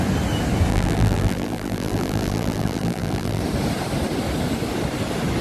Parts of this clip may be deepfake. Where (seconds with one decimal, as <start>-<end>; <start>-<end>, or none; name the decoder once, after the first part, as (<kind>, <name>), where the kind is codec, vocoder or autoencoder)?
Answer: 0.7-3.4 (vocoder, BigVGAN v2)